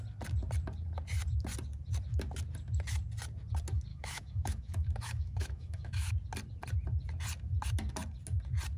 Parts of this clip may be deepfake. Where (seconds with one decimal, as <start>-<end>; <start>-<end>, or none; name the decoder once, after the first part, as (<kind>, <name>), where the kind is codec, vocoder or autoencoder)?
3.9-6.1 (autoencoder, DAC-VAE)